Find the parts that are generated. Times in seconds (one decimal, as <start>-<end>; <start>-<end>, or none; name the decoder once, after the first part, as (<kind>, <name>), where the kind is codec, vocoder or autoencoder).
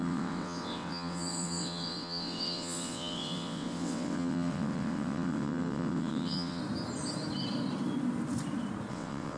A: 0.0-6.6 (vocoder, WaveNeXt); 8.9-9.4